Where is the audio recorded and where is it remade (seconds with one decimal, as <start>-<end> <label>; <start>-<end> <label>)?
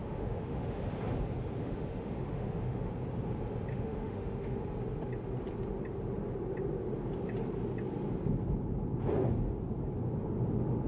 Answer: 0.0-0.9 remade; 0.9-1.6 recorded; 1.6-2.9 remade; 2.9-3.7 recorded; 3.7-4.6 remade; 4.6-10.9 recorded